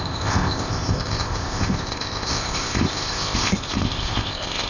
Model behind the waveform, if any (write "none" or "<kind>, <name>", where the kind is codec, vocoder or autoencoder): codec, ZipCodec